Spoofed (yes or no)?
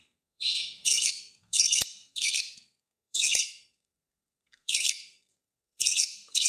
yes